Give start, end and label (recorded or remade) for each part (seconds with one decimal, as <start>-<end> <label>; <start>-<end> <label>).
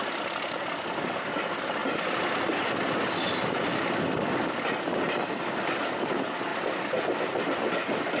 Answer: 0.0-8.2 recorded